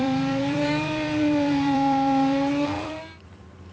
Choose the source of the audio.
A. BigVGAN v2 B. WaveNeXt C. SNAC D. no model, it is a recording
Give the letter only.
A